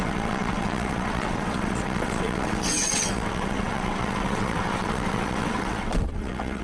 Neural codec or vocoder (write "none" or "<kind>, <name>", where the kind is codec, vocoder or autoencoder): vocoder, WaveNeXt